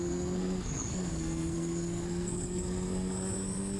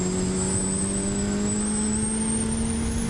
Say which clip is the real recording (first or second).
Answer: second